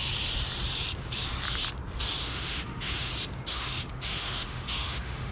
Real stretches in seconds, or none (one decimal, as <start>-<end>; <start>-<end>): 0.0-2.2; 3.1-3.5